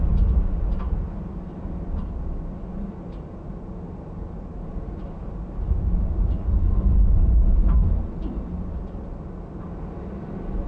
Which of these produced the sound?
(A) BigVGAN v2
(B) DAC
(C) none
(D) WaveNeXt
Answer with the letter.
C